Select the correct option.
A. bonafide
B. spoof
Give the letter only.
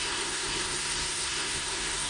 B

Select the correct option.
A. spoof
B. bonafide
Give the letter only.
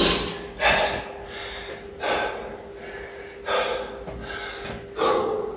B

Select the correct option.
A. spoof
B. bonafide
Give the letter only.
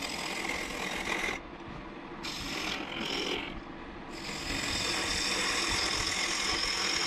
B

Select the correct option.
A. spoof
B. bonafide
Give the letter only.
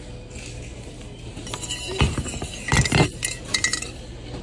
B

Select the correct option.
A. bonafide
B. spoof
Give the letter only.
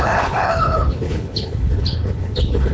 B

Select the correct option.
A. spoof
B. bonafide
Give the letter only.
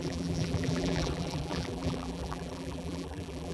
A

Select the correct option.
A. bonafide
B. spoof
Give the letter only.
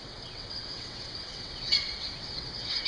B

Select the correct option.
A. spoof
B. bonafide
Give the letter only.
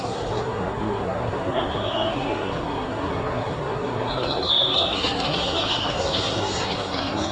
A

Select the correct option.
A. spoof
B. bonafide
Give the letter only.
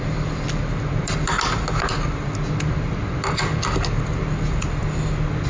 B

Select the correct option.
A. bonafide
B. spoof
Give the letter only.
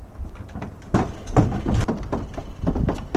A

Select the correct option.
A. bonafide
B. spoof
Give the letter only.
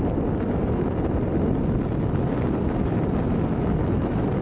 A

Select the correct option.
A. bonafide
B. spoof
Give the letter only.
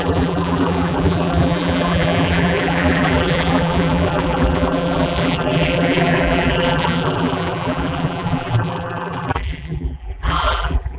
B